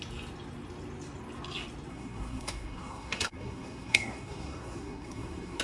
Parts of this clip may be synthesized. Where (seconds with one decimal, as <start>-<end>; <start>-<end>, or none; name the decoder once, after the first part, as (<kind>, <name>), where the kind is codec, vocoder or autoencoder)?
1.9-5.6 (codec, SNAC)